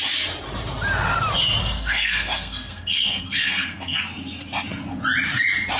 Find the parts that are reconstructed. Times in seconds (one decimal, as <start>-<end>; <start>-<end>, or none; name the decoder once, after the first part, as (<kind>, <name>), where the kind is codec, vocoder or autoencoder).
1.6-4.0 (codec, SNAC)